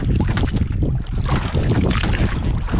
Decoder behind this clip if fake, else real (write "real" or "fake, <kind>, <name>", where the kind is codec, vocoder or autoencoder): real